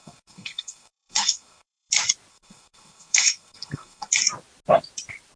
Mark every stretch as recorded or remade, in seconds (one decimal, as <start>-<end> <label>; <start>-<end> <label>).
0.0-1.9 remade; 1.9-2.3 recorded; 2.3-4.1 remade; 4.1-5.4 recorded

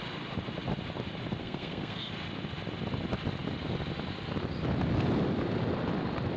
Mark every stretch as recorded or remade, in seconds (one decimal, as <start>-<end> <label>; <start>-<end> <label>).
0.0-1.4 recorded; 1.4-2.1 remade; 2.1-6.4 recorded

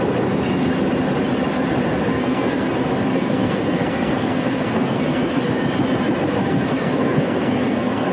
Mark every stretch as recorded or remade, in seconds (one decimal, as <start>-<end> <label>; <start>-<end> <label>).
0.0-2.1 recorded; 2.1-2.7 remade; 2.7-3.1 recorded; 3.1-5.4 remade; 5.4-6.4 recorded; 6.4-8.1 remade

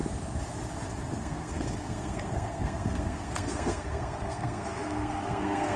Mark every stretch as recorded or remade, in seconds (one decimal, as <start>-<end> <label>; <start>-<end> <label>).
0.0-1.2 recorded; 1.2-5.8 remade

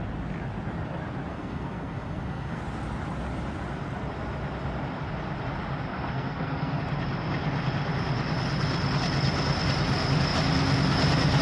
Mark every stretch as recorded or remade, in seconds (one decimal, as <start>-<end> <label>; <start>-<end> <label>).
0.0-1.3 recorded; 1.3-2.6 remade; 2.6-5.9 recorded; 5.9-6.8 remade; 6.8-11.4 recorded

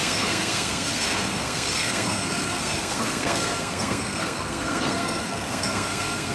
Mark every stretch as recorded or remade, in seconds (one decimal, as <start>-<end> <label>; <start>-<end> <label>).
0.0-6.3 remade

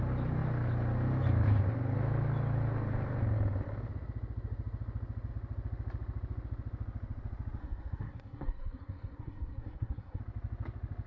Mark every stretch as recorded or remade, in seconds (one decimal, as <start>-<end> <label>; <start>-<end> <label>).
0.0-7.6 recorded; 7.6-10.2 remade; 10.2-11.1 recorded

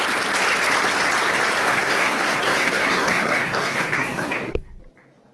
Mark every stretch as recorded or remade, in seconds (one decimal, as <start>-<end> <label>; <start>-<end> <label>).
0.0-1.6 recorded; 1.6-4.8 remade; 4.8-5.3 recorded